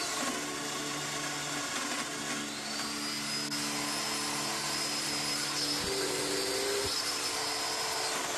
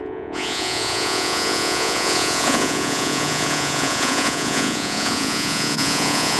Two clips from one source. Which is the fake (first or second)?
second